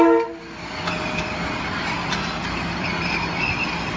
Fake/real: real